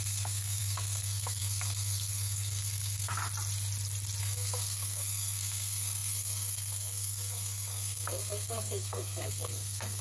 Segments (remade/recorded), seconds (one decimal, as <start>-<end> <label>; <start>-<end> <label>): 0.0-3.2 remade; 3.2-4.2 recorded; 4.2-10.0 remade